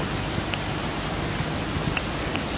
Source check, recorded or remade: recorded